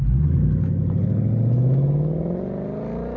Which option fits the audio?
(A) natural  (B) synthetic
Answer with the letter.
A